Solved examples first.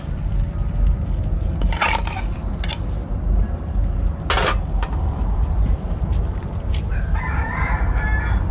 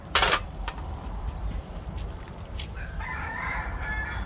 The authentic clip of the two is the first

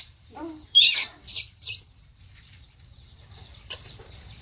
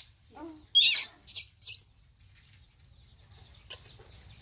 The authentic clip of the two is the second